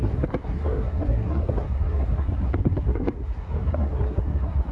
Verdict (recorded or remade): remade